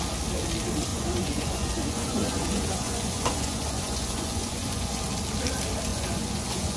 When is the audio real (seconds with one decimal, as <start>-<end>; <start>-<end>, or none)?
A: 0.0-0.9; 5.0-5.9